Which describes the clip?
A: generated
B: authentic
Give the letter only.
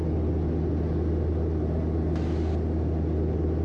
B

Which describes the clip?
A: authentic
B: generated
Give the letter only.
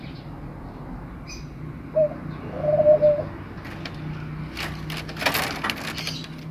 A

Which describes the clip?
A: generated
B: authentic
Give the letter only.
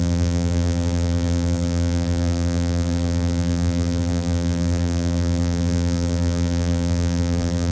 A